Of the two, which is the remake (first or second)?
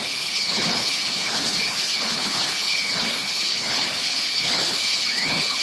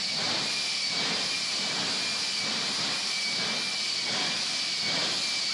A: first